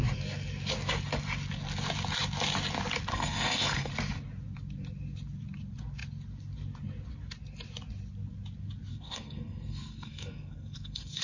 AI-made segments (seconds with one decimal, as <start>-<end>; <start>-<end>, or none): 3.1-3.9; 8.9-11.2